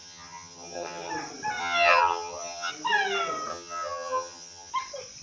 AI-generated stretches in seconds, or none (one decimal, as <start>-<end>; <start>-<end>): 0.0-1.1; 1.6-2.7; 3.5-4.7